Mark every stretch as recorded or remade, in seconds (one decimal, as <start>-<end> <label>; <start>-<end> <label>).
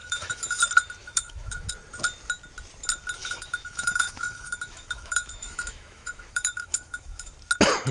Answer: 0.0-0.6 remade; 0.6-1.0 recorded; 1.0-1.7 remade; 1.7-3.2 recorded; 3.2-7.3 remade; 7.3-7.9 recorded